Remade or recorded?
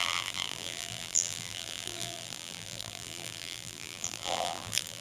remade